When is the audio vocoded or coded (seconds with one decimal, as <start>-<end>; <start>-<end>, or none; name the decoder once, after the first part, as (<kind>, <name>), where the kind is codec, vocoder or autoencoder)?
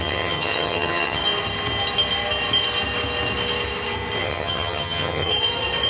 0.0-1.2 (vocoder, HiFi-GAN); 4.2-5.3